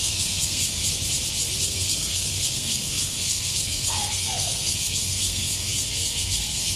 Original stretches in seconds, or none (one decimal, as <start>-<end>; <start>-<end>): 0.8-1.6